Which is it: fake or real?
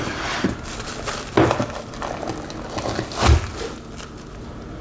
real